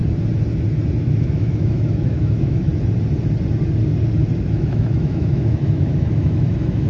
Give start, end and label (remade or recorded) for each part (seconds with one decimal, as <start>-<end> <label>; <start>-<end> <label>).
0.0-1.0 recorded; 1.0-2.7 remade; 2.7-4.5 recorded; 4.5-6.9 remade